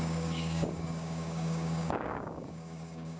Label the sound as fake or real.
fake